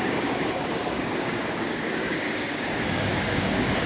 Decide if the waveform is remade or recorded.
remade